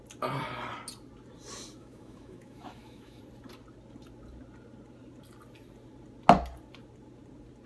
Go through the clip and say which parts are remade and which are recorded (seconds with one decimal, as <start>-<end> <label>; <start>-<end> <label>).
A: 0.0-1.8 recorded; 1.8-3.2 remade; 3.2-7.7 recorded

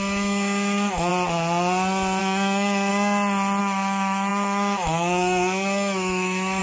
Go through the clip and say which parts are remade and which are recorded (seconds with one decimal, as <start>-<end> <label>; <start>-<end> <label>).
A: 0.0-1.1 remade; 1.1-2.2 recorded; 2.2-2.9 remade; 2.9-3.6 recorded; 3.6-6.6 remade

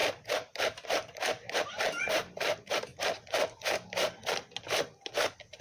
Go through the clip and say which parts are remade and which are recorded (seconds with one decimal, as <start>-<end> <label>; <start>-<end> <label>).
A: 0.0-2.9 remade; 2.9-5.6 recorded

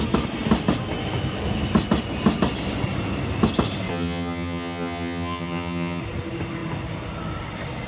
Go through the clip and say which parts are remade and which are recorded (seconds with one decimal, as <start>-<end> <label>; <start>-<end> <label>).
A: 0.0-3.9 recorded; 3.9-6.0 remade; 6.0-7.9 recorded

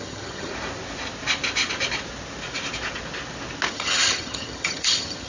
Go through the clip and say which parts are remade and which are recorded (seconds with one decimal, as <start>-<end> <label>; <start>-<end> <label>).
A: 0.0-0.5 remade; 0.5-3.7 recorded; 3.7-5.3 remade